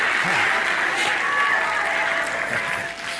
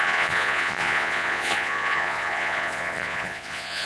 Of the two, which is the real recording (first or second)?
first